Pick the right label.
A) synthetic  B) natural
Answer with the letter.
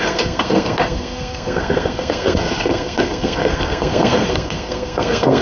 A